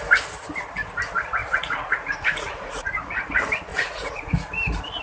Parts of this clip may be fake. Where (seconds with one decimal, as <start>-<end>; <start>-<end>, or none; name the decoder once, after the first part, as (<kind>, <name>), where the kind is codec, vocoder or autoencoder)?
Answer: 1.4-3.0 (vocoder, Vocos); 3.7-4.3